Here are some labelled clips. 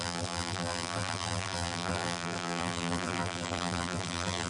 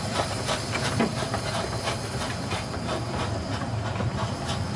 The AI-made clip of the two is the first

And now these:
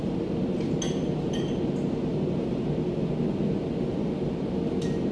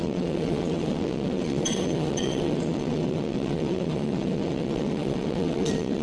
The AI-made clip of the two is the second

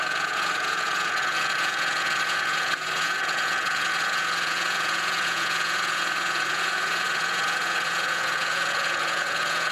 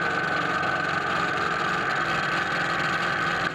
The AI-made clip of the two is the first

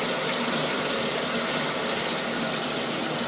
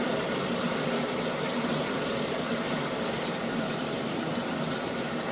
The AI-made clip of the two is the second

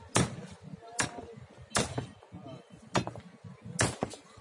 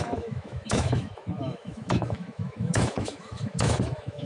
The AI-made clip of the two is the second